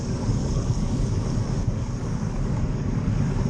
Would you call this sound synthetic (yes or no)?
yes